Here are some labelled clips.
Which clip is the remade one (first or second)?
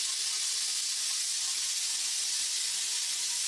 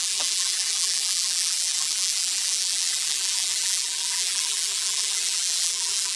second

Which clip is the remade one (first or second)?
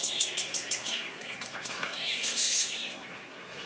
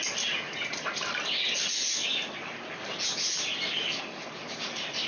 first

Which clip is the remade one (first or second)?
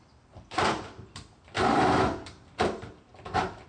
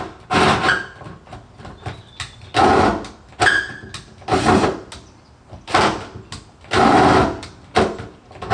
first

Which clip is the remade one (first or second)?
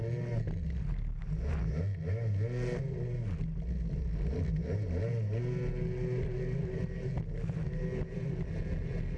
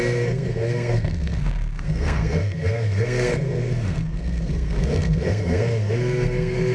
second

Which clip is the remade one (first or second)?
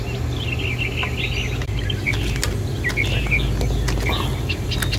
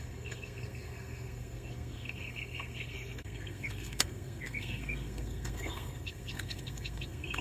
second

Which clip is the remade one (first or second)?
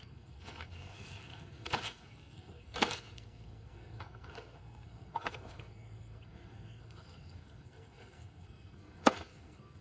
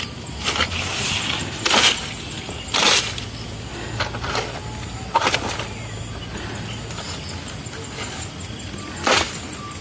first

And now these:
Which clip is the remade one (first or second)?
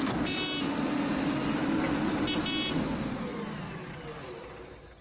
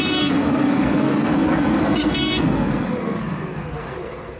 second